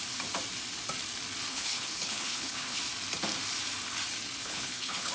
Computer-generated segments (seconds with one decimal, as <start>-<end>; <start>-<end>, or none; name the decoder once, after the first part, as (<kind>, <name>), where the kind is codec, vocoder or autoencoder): 1.5-2.8 (codec, HILCodec); 4.4-5.1